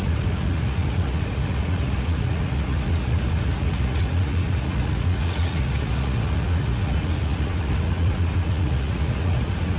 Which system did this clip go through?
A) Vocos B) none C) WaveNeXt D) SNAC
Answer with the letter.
A